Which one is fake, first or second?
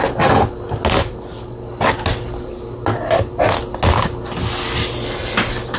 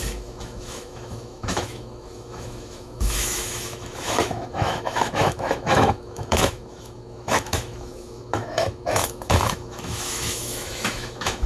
second